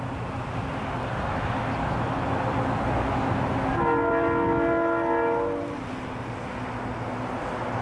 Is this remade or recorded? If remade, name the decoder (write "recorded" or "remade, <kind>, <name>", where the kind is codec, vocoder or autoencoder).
recorded